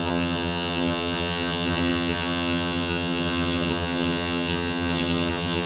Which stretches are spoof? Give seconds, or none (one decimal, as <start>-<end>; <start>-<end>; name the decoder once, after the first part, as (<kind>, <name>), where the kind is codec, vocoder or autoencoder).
0.0-5.7 (vocoder, HiFi-GAN)